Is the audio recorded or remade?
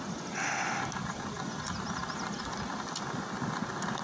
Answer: recorded